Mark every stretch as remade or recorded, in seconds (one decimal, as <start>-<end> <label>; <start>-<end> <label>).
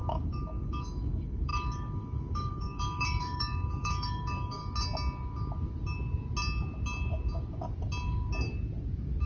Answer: 0.0-4.6 remade; 4.6-9.3 recorded